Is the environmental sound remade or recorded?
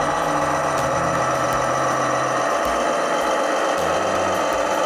recorded